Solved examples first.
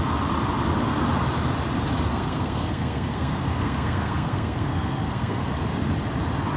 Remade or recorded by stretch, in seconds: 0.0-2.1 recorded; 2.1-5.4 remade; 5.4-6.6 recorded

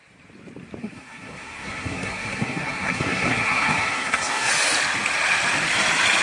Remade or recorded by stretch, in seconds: 0.0-0.8 recorded; 0.8-4.5 remade; 4.5-6.2 recorded

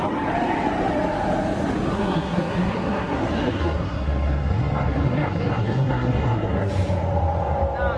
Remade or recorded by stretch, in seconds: 0.0-1.9 recorded; 1.9-6.7 remade; 6.7-8.0 recorded

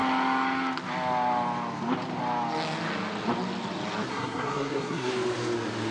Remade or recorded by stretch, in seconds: 0.0-4.1 recorded; 4.1-5.1 remade; 5.1-5.9 recorded

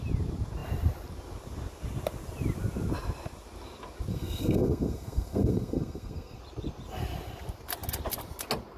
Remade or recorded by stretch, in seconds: 0.0-4.1 recorded; 4.1-6.4 remade; 6.4-8.8 recorded

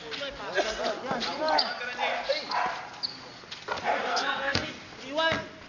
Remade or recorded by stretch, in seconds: 0.0-4.1 recorded; 4.1-4.7 remade; 4.7-5.7 recorded

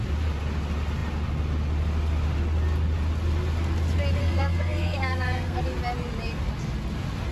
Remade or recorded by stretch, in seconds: 0.0-4.2 recorded; 4.2-5.6 remade; 5.6-7.3 recorded

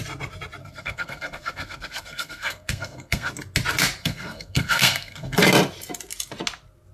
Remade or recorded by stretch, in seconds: 0.0-0.6 recorded; 0.6-3.3 remade; 3.3-4.0 recorded; 4.0-5.4 remade; 5.4-6.9 recorded